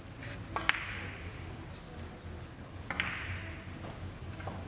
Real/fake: real